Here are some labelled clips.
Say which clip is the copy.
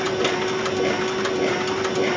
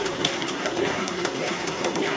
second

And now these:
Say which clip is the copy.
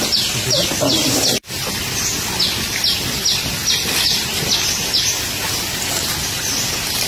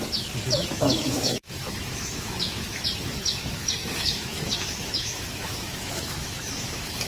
second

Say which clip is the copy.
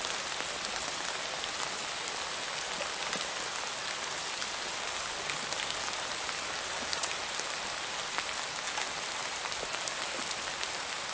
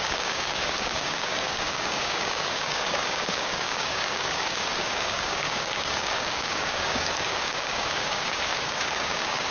second